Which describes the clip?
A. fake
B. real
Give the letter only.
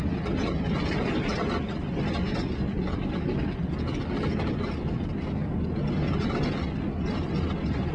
B